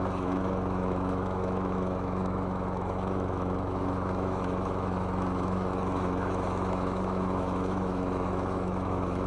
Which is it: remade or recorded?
remade